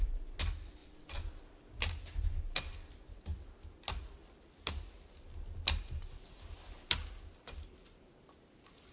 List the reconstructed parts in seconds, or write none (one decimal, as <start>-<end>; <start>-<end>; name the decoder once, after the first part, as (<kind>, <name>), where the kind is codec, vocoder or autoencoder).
none